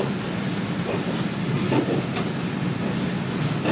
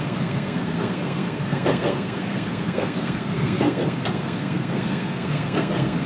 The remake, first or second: second